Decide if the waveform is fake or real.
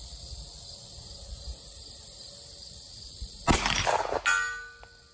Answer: real